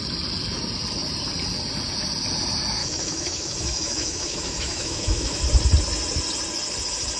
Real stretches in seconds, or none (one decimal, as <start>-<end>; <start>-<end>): 0.0-2.8; 5.4-7.2